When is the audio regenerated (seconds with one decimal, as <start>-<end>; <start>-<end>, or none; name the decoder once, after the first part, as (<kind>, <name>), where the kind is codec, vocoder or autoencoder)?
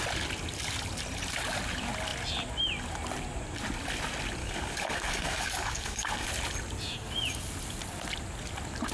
4.4-6.3 (codec, DAC)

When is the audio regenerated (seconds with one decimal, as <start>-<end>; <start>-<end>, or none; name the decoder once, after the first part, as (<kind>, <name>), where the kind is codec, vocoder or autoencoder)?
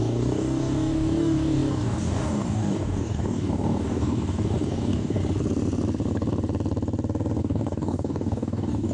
0.0-5.2 (codec, DAC); 7.4-8.9